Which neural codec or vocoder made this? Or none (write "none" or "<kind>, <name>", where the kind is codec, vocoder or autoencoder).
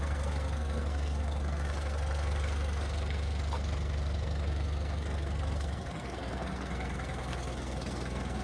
codec, SNAC